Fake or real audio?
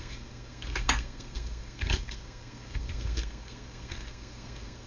fake